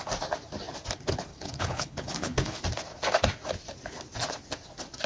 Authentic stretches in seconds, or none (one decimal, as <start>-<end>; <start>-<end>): 0.0-1.3; 2.6-5.1